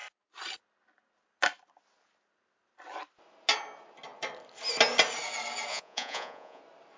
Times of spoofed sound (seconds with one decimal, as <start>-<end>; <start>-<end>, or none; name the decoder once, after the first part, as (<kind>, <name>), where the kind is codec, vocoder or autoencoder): 5.7-6.6 (vocoder, Vocos)